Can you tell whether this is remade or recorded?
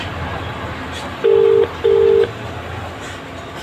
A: recorded